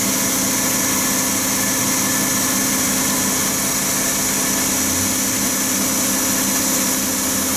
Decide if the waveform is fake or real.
real